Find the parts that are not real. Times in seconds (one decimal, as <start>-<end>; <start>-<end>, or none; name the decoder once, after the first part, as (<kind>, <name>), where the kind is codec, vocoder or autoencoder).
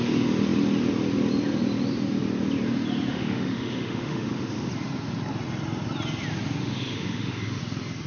3.1-4.7 (autoencoder, DAC-VAE); 6.6-7.6